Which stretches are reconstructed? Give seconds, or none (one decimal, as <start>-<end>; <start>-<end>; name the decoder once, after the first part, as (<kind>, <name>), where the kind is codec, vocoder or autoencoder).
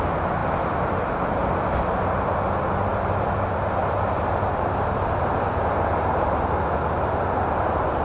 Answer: none